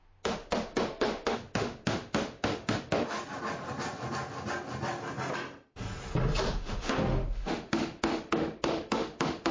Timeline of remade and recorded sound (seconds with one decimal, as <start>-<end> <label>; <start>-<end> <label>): 0.0-3.2 remade; 3.2-6.5 recorded; 6.5-9.5 remade

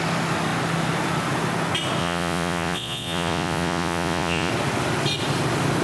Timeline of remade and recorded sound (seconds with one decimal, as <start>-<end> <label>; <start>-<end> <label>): 0.0-2.0 recorded; 2.0-4.5 remade; 4.5-5.8 recorded